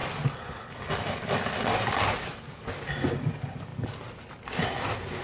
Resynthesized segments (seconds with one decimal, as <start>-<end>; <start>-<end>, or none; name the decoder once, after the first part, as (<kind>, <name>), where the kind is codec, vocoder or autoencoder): none